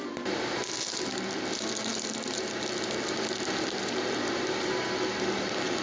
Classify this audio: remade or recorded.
remade